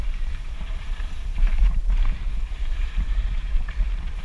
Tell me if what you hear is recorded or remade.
remade